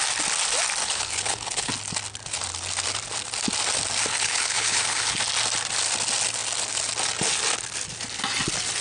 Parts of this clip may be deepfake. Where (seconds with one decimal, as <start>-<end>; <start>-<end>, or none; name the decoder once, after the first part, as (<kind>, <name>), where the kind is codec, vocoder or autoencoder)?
0.8-1.7 (codec, HILCodec); 4.1-5.2